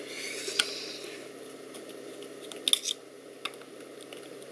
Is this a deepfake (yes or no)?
no